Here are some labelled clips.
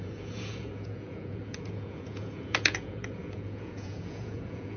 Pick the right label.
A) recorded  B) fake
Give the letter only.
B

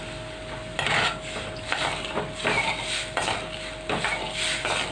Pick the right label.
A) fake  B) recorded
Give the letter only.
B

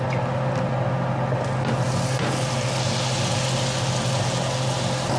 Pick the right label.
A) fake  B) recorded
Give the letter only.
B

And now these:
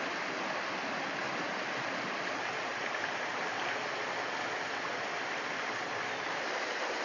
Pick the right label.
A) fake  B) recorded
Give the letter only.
B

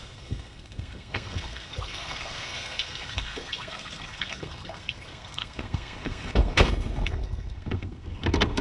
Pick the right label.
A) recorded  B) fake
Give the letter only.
B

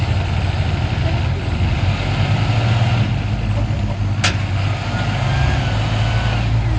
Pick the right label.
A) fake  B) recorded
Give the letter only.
B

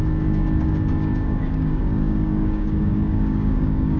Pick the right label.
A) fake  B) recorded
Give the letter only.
A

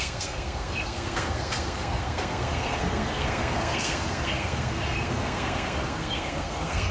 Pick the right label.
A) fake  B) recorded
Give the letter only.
A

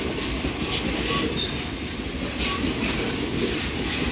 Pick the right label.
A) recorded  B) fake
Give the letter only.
A